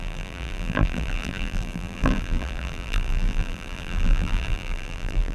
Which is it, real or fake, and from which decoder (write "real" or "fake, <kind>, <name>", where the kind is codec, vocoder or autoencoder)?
fake, vocoder, BigVGAN v2